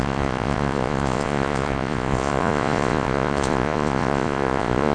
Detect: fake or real fake